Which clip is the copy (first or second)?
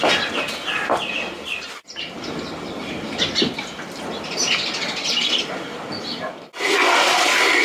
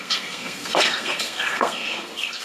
second